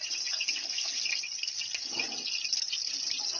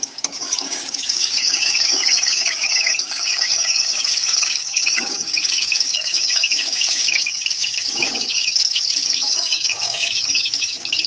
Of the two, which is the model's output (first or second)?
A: second